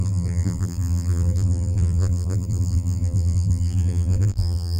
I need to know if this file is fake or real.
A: fake